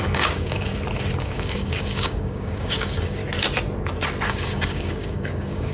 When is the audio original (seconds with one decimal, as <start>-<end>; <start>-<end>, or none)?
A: 0.7-1.2; 3.2-4.3